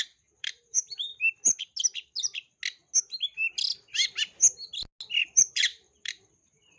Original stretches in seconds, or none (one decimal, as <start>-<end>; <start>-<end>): 1.1-5.2